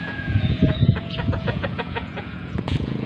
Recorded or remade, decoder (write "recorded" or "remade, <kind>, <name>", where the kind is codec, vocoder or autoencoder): remade, vocoder, Vocos